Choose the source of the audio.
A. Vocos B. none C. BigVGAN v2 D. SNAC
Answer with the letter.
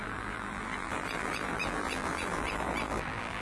C